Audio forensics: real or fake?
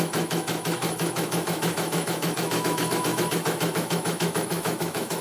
fake